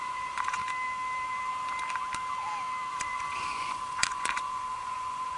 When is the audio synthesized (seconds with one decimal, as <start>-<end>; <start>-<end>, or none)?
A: 0.0-0.6; 2.9-5.4